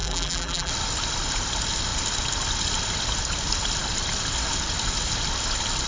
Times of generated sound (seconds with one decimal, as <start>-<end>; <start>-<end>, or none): 0.0-0.7